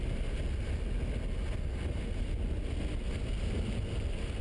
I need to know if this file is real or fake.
real